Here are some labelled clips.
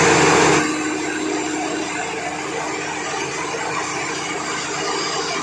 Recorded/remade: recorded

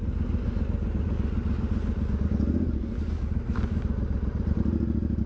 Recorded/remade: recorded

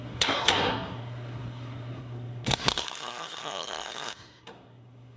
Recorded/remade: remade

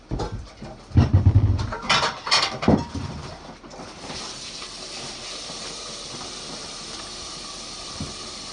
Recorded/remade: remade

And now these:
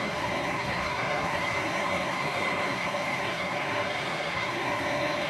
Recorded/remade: remade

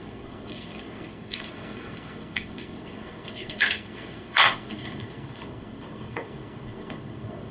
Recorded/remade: remade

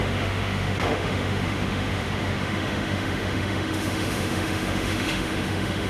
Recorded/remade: remade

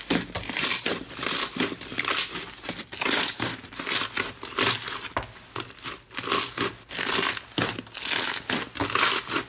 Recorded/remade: recorded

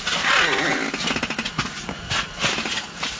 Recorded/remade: recorded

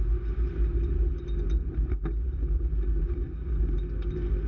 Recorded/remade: recorded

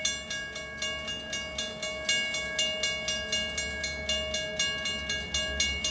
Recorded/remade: recorded